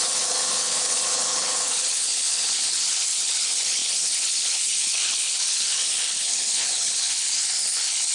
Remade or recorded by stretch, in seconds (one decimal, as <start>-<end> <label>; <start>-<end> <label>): 0.0-8.1 remade